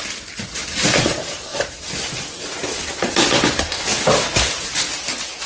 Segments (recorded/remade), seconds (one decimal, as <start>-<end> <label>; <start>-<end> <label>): 0.0-5.5 recorded